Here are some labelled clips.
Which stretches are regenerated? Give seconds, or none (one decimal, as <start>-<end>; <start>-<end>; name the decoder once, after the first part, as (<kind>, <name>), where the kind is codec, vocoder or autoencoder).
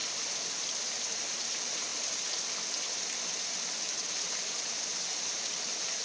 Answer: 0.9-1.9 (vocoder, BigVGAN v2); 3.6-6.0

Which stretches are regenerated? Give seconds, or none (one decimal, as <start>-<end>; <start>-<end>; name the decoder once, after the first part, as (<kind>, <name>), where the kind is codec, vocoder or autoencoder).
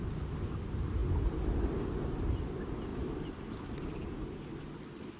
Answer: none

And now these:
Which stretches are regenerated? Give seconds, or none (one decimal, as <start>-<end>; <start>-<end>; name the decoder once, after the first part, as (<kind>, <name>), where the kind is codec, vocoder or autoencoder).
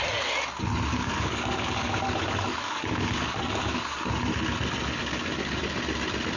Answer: 0.9-4.1 (codec, DAC); 5.0-5.6